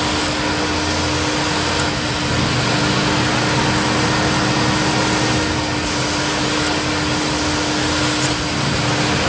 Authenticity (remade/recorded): recorded